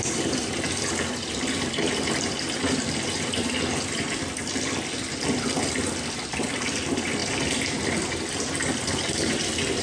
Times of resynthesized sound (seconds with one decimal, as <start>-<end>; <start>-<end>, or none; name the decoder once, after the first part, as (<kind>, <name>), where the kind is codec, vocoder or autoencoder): none